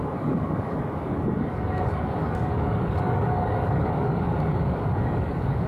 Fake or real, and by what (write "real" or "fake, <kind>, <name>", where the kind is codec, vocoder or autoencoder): fake, codec, DAC